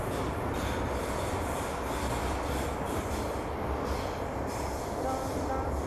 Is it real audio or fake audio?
real